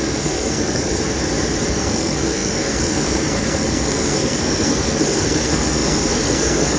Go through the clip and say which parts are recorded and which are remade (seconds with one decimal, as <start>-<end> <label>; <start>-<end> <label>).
0.0-1.0 remade; 1.0-1.7 recorded; 1.7-6.8 remade